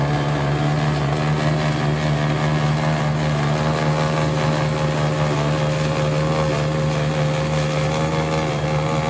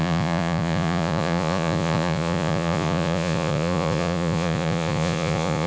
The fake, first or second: second